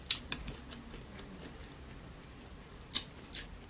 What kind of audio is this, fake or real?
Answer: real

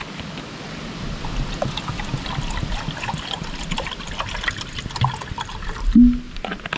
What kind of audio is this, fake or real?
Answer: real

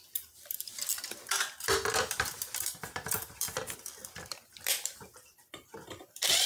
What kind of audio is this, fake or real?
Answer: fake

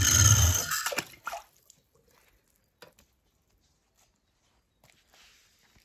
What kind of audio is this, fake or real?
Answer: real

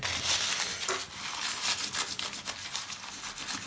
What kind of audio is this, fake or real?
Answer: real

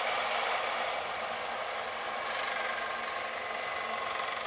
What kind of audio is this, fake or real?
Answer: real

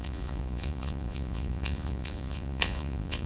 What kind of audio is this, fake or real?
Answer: fake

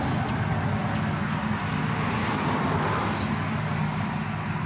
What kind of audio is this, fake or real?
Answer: real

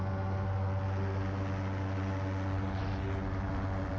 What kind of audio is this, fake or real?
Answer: real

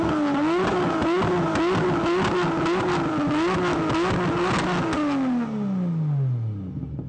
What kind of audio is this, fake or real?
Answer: real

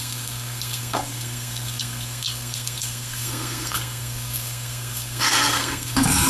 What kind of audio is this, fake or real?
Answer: fake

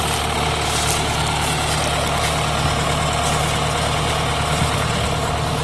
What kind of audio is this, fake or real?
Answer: real